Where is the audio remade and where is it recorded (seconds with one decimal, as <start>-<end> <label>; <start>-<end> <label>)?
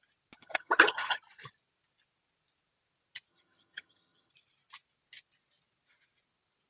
0.0-0.4 recorded; 0.4-1.2 remade; 1.2-3.3 recorded; 3.3-4.3 remade; 4.3-6.7 recorded